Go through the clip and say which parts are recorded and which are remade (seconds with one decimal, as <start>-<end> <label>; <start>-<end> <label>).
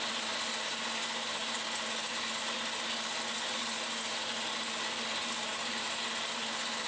0.0-6.9 recorded